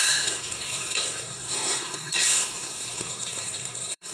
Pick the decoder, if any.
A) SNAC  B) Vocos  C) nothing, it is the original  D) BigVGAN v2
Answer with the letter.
A